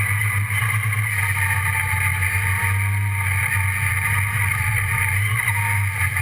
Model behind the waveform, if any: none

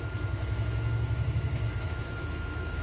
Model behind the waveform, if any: autoencoder, DAC-VAE